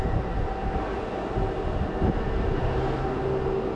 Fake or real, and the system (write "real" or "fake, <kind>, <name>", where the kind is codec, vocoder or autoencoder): real